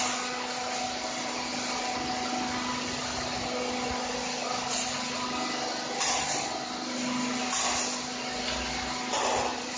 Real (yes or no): yes